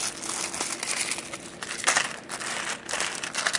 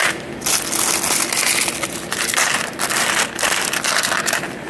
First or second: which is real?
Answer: first